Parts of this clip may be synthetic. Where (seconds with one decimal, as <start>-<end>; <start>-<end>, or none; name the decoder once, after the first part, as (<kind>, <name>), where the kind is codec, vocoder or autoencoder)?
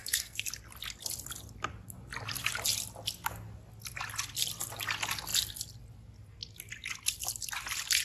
0.0-0.5 (codec, SNAC)